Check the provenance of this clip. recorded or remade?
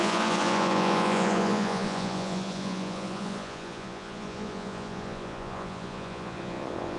remade